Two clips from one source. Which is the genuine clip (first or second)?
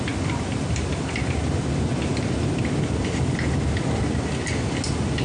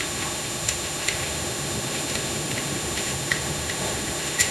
first